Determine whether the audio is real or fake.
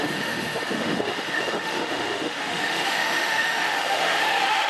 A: fake